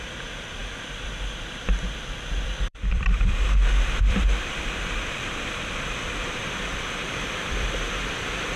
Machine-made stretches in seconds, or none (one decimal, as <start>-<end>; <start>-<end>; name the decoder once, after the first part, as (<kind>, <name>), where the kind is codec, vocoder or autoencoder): 0.0-8.6 (vocoder, BigVGAN v2)